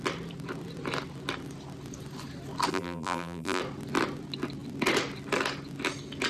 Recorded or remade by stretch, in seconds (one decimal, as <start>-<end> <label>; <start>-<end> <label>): 0.0-2.7 recorded; 2.7-3.6 remade; 3.6-6.3 recorded